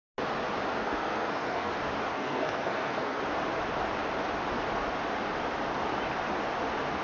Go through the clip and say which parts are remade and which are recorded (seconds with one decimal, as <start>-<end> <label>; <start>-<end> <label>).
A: 0.0-0.8 recorded; 0.8-1.7 remade; 1.7-2.1 recorded; 2.1-3.2 remade; 3.2-7.0 recorded